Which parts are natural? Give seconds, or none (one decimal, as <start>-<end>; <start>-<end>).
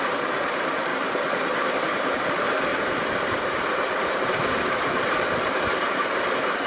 0.9-1.8